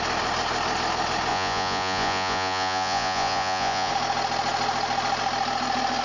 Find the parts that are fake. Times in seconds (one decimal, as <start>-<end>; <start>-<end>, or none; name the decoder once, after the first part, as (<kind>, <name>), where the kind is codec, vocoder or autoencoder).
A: 1.3-3.9 (vocoder, Vocos)